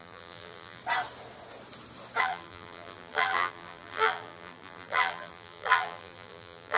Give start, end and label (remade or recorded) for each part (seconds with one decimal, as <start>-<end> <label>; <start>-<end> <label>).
0.0-0.8 remade; 0.8-2.2 recorded; 2.2-6.8 remade